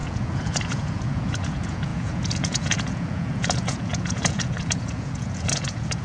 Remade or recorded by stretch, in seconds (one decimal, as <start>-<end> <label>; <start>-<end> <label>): 0.0-6.0 remade